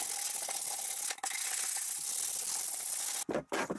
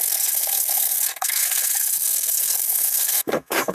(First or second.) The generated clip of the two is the second